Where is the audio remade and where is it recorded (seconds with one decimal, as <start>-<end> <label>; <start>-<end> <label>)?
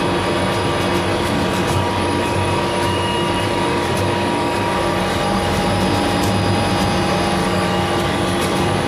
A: 0.0-1.1 recorded; 1.1-5.7 remade; 5.7-7.4 recorded; 7.4-8.9 remade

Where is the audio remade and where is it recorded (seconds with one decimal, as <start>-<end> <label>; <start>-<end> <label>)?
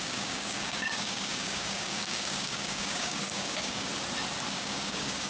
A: 0.0-3.9 remade; 3.9-4.5 recorded; 4.5-5.3 remade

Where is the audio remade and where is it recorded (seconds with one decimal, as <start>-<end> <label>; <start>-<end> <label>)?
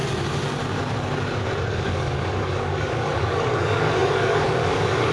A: 0.0-1.7 recorded; 1.7-5.1 remade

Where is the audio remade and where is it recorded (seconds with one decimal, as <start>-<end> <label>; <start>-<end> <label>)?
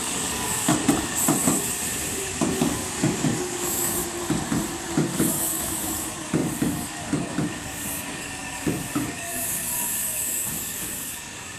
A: 0.0-0.7 remade; 0.7-2.2 recorded; 2.2-4.0 remade; 4.0-4.7 recorded; 4.7-11.6 remade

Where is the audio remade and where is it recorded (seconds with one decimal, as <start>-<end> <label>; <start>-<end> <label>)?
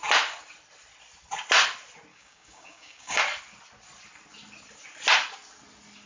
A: 0.0-2.1 recorded; 2.1-3.2 remade; 3.2-6.1 recorded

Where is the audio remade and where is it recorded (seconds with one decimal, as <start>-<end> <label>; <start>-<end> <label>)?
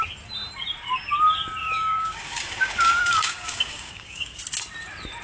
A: 0.0-1.6 recorded; 1.6-4.4 remade; 4.4-5.2 recorded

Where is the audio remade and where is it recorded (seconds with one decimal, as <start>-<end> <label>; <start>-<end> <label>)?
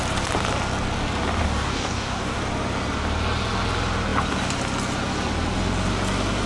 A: 0.0-1.4 recorded; 1.4-2.4 remade; 2.4-6.5 recorded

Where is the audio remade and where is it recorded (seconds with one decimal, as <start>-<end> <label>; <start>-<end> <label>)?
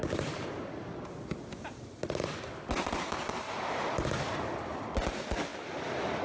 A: 0.0-6.2 recorded